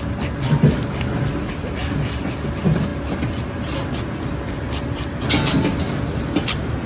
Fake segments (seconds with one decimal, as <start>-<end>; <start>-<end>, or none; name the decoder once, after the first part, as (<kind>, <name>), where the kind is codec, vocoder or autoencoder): none